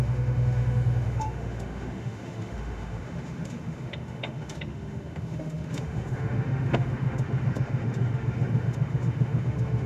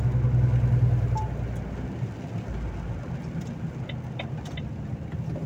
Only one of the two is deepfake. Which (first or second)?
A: first